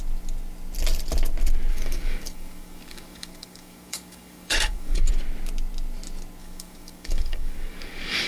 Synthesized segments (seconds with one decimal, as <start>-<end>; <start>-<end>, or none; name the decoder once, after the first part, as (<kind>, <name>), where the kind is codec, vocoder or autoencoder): 1.7-5.1 (codec, DAC); 6.4-8.3